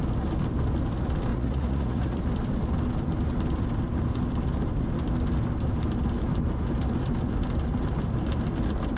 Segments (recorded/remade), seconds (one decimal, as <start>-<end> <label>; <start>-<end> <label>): 0.0-1.3 recorded; 1.3-2.2 remade; 2.2-9.0 recorded